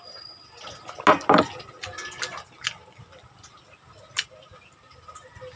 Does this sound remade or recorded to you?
recorded